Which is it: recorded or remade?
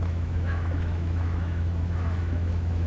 remade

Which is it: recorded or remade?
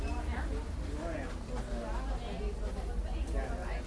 recorded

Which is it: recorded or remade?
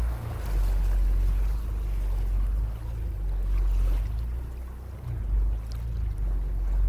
recorded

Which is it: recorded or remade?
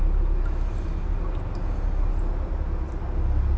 recorded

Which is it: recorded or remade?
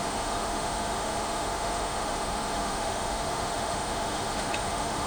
remade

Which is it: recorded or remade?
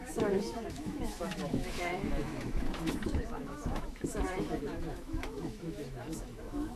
remade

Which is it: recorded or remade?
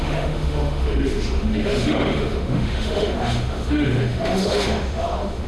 remade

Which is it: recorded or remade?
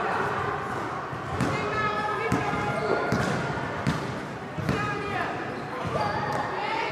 recorded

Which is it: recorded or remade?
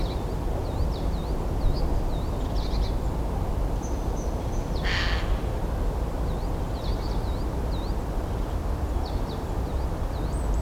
recorded